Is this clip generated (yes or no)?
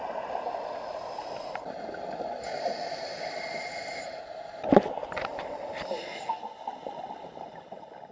no